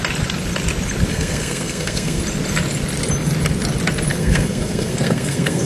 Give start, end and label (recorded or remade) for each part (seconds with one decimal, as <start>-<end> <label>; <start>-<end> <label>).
0.0-1.1 recorded; 1.1-2.2 remade; 2.2-4.1 recorded; 4.1-5.7 remade